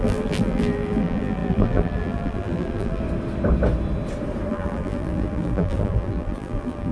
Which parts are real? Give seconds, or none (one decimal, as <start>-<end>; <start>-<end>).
3.0-4.5